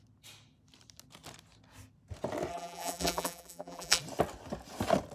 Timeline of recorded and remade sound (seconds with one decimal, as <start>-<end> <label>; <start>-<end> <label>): 0.0-2.5 recorded; 2.5-4.0 remade; 4.0-5.1 recorded